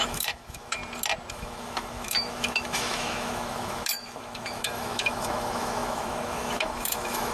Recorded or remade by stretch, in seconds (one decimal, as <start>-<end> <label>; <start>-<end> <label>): 0.0-0.8 remade; 0.8-1.3 recorded; 1.3-7.3 remade